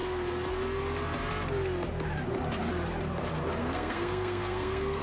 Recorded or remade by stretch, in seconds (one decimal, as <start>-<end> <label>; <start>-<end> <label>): 0.0-3.6 recorded; 3.6-5.0 remade